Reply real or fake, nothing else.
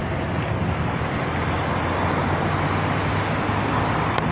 real